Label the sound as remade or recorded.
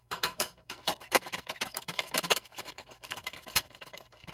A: remade